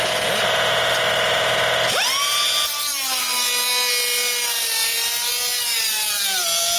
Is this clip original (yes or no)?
yes